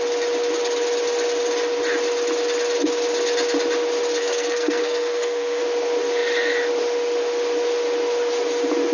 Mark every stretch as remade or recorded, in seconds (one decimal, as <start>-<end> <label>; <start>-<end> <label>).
0.0-4.2 recorded; 4.2-5.6 remade; 5.6-8.9 recorded